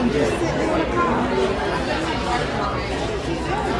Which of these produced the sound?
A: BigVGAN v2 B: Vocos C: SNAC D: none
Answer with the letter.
D